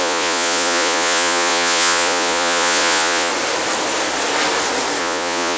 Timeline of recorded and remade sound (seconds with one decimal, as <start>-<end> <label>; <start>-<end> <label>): 0.0-3.3 remade; 3.3-5.0 recorded; 5.0-5.6 remade